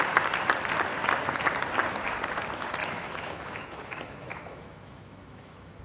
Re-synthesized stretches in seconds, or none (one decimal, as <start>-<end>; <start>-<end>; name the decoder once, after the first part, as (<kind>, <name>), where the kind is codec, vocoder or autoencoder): 2.8-5.8 (autoencoder, DAC-VAE)